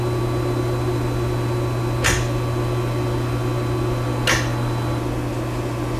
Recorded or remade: recorded